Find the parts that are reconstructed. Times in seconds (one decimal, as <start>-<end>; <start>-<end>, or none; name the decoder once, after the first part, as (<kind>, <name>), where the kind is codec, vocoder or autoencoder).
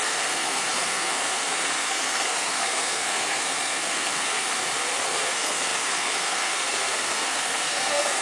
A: 0.0-4.6 (codec, SNAC); 5.1-8.2